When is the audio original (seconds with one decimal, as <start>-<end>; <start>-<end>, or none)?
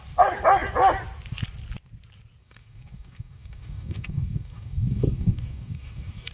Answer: 0.0-2.4